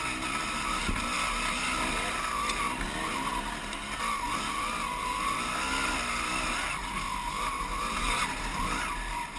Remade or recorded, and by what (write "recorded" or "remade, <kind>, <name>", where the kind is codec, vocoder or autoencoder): recorded